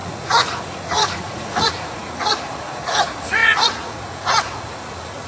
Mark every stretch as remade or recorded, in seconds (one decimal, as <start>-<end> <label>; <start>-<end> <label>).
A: 0.0-5.3 remade